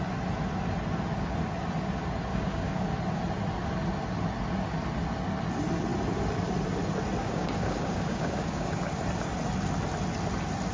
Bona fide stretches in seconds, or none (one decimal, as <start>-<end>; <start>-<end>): 0.0-2.3; 2.9-7.2; 9.0-10.7